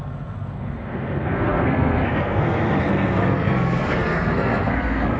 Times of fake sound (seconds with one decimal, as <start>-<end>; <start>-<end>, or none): 0.0-5.2